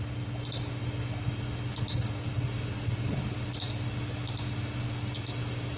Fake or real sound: real